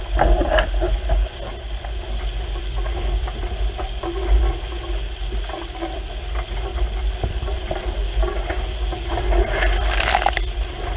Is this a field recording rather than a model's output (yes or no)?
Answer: yes